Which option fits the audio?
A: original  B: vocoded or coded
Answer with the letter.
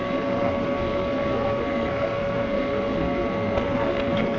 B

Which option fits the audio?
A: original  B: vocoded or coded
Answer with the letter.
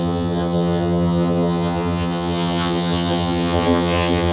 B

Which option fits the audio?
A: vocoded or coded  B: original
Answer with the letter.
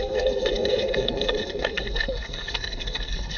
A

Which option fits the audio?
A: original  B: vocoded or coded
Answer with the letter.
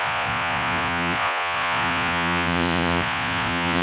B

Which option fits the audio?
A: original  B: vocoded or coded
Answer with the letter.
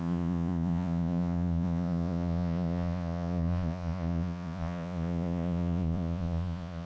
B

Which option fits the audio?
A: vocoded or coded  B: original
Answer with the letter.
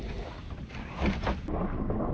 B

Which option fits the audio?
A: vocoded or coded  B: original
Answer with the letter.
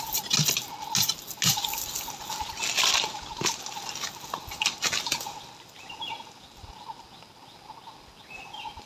B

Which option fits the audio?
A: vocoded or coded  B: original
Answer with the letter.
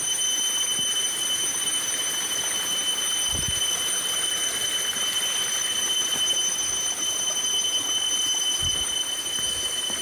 B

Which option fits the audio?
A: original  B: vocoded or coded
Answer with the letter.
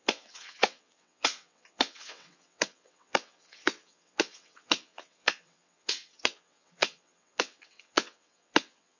B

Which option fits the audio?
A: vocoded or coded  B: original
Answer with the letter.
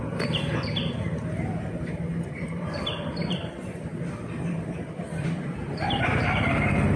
A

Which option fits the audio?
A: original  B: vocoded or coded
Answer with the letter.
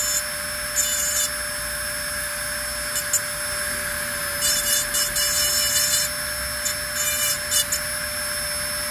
A